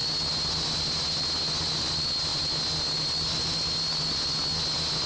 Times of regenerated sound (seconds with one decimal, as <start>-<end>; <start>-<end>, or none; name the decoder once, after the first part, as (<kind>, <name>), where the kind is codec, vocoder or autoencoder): none